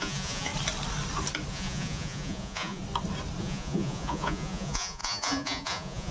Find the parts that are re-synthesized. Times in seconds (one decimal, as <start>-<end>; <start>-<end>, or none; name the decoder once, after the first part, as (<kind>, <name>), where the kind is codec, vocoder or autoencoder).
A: 0.0-0.5 (vocoder, Vocos); 1.5-2.8; 3.4-6.1